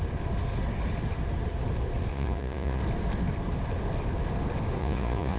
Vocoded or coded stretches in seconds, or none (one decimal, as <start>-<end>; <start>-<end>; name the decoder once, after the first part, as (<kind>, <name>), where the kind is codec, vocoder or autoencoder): 2.1-2.8 (vocoder, Vocos); 4.8-5.4